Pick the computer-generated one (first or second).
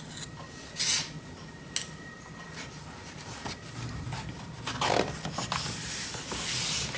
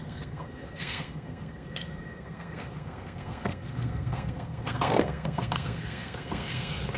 second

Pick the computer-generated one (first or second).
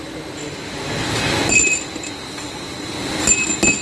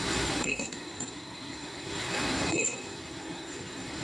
second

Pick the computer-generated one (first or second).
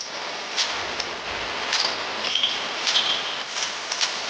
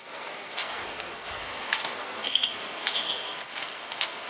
second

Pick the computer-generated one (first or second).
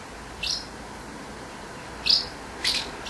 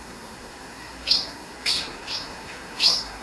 second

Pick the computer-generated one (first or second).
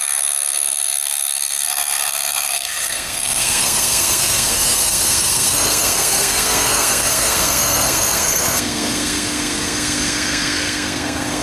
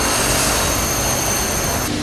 first